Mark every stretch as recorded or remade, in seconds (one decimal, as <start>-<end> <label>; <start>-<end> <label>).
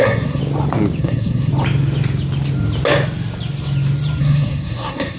0.0-0.4 remade; 0.4-1.0 recorded; 1.0-1.5 remade; 1.5-4.2 recorded; 4.2-5.2 remade